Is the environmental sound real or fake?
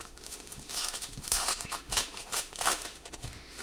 fake